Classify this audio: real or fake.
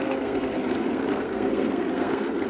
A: fake